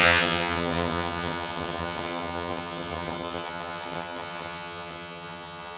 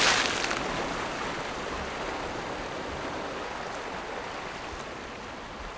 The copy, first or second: first